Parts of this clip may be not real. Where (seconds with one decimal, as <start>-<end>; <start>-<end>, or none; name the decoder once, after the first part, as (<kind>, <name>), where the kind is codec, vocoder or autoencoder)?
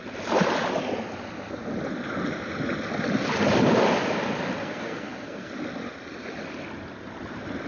4.6-5.5 (codec, SNAC)